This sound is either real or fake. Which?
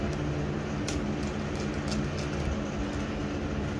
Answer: real